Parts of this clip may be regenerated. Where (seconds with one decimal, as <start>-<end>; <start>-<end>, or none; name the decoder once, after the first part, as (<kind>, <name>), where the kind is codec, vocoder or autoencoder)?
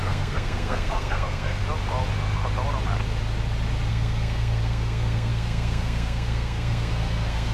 0.0-1.6 (codec, SNAC); 3.9-7.5